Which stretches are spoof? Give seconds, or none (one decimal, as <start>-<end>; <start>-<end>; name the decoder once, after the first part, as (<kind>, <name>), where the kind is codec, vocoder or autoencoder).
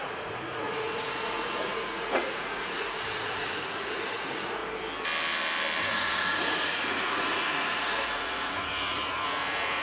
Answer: 0.0-4.6 (vocoder, Vocos); 5.8-9.8